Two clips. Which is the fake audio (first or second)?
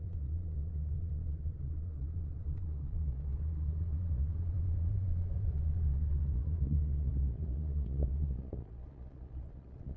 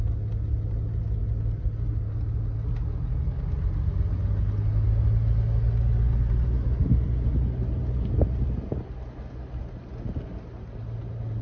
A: first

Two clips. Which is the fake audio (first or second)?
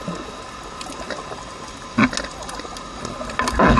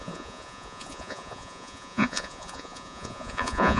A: second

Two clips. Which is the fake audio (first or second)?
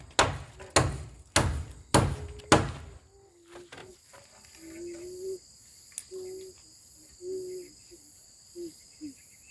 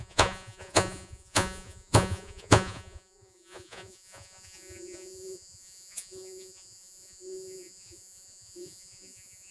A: second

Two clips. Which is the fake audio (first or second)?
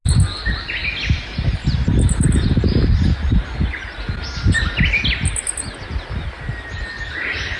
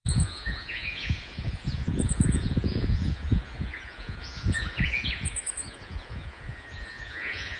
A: second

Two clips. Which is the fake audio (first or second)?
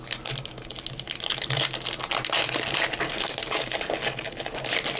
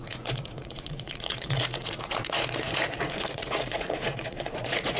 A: second